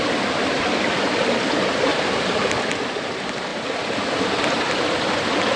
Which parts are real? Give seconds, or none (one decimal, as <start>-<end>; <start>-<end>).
0.0-1.9; 2.5-5.6